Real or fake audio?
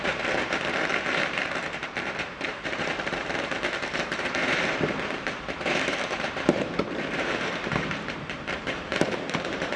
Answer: fake